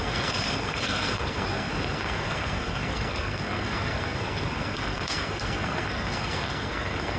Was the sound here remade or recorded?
remade